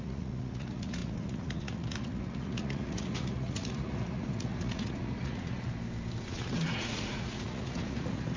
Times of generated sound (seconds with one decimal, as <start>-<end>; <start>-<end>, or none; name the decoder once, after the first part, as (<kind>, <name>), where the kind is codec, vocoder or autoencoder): 0.0-5.7 (vocoder, Vocos); 6.2-8.4